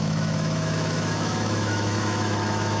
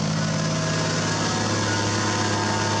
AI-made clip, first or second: first